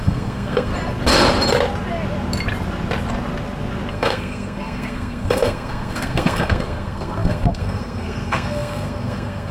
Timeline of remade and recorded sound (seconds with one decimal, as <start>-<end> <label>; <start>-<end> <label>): 0.0-0.7 remade; 0.7-3.9 recorded; 3.9-9.5 remade